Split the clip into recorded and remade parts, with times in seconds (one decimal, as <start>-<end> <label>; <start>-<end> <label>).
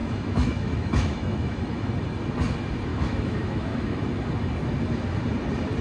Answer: 0.0-1.9 remade; 1.9-2.9 recorded; 2.9-4.0 remade; 4.0-5.8 recorded